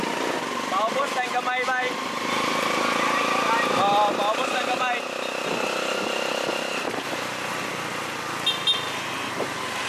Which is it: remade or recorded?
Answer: recorded